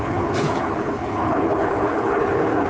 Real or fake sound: fake